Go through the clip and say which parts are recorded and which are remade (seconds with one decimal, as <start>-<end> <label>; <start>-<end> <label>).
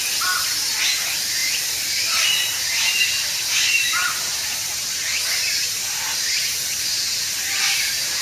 0.0-8.2 recorded